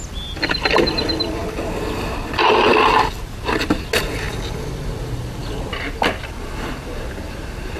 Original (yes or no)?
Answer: yes